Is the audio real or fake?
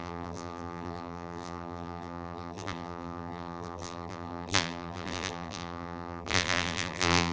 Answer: fake